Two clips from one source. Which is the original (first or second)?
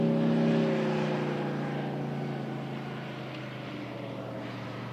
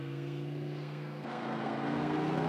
first